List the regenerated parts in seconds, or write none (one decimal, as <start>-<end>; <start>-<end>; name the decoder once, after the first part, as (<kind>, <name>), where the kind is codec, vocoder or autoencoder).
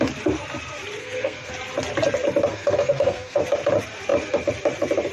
1.0-1.5 (codec, SNAC); 2.5-3.4